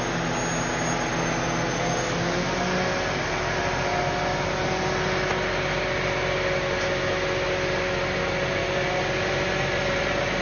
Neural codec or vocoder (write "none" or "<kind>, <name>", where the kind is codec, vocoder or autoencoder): none